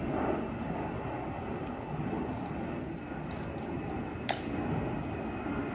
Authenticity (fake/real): real